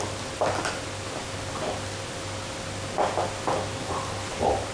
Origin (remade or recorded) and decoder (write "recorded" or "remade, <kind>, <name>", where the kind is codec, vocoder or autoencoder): recorded